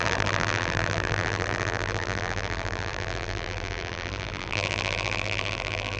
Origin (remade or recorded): remade